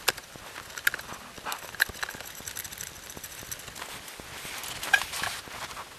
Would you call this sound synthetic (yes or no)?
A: no